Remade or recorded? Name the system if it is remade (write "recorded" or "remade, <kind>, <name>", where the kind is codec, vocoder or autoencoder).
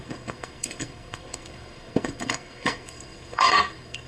remade, codec, SNAC